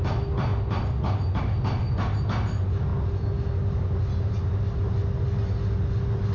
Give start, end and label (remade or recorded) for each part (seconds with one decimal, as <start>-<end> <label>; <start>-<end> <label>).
0.0-6.3 recorded